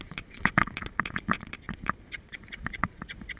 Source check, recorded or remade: remade